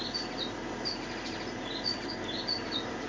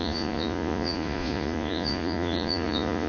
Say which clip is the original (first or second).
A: first